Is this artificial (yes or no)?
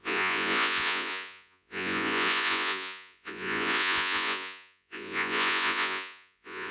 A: yes